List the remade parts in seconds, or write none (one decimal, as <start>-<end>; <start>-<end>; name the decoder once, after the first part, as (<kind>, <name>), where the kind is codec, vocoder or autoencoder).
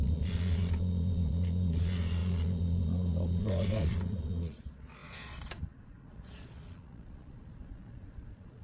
0.0-8.6 (vocoder, Vocos)